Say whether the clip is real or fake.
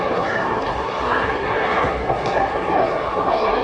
fake